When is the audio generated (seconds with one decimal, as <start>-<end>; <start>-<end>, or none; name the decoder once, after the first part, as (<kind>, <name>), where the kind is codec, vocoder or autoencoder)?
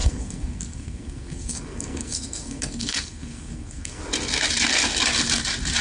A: 0.0-4.0 (codec, SNAC)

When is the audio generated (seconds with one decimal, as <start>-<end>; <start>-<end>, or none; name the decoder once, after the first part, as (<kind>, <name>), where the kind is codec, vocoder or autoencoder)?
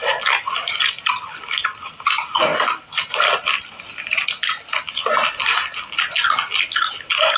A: none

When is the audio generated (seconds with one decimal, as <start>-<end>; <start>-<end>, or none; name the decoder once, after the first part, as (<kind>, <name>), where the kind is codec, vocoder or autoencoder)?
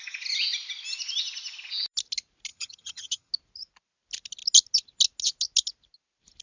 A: 2.5-3.3 (vocoder, HiFi-GAN)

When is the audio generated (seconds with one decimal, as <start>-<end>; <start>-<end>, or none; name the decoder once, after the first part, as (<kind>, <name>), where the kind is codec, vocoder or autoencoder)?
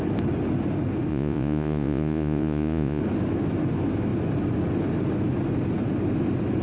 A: 1.1-3.0 (vocoder, Vocos)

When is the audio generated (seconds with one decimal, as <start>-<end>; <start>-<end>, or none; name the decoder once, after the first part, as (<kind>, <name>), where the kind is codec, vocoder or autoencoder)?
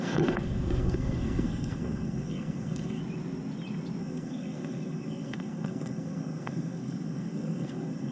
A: 0.0-3.0 (codec, SNAC); 4.0-8.1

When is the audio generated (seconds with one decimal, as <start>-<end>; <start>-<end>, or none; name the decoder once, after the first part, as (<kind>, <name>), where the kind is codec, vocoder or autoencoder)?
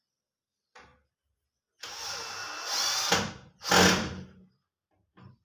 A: none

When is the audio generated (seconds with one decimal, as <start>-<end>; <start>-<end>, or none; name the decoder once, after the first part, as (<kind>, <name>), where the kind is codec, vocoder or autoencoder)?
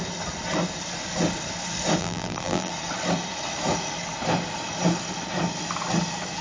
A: 2.0-2.7 (vocoder, BigVGAN v2)